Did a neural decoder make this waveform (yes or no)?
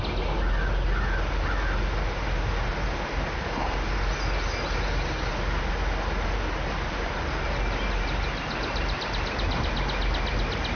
no